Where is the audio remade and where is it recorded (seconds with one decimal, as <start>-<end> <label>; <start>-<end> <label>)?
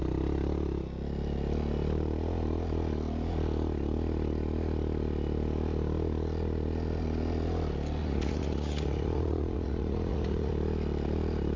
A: 0.0-8.0 recorded; 8.0-10.5 remade; 10.5-11.6 recorded